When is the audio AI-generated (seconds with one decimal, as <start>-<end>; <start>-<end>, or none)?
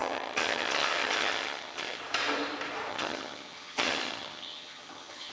0.0-2.0; 2.9-5.3